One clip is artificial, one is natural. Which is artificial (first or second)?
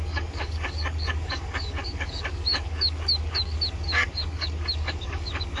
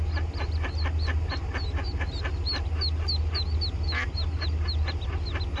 first